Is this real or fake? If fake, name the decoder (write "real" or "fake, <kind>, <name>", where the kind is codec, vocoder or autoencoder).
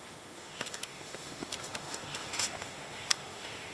fake, autoencoder, DAC-VAE